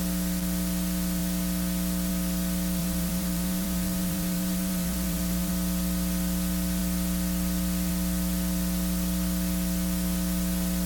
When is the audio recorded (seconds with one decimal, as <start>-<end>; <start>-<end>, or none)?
0.0-2.8; 5.5-10.9